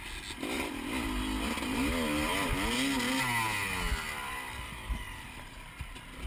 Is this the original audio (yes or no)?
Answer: yes